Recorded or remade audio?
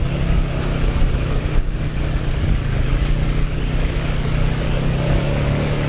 remade